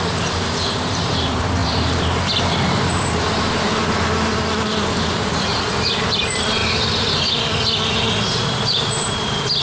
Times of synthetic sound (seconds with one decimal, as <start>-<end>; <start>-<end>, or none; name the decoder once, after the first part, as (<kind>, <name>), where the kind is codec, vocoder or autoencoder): 0.0-3.8 (vocoder, BigVGAN v2); 5.2-6.6; 8.0-9.6